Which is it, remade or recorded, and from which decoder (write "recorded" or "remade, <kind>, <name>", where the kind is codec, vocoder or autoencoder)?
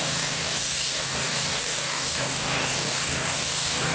remade, codec, DAC